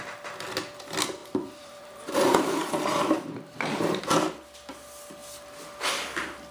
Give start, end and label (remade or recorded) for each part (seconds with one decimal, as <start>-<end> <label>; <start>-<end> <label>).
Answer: 0.0-1.2 recorded; 1.2-4.0 remade; 4.0-6.5 recorded